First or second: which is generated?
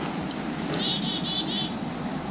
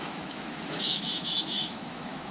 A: second